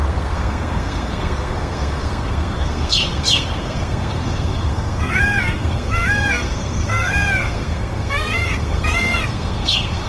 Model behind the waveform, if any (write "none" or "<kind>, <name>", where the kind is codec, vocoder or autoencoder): codec, SNAC